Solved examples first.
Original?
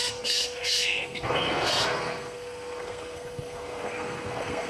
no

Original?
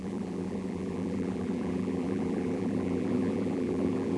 no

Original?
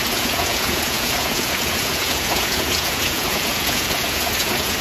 no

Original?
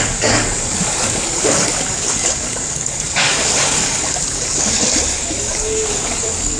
no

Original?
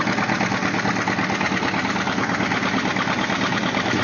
yes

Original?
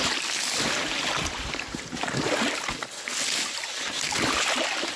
yes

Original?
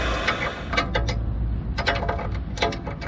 yes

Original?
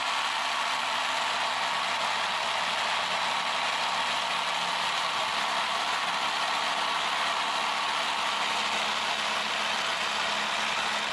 yes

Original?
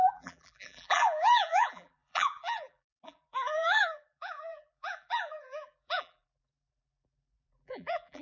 no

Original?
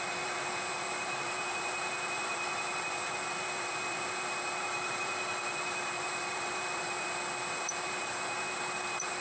no